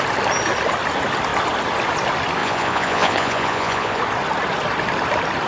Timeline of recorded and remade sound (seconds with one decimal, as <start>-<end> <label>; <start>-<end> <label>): 0.0-2.4 recorded; 2.4-4.0 remade; 4.0-5.5 recorded